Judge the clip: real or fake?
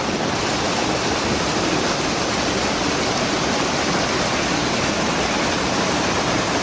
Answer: real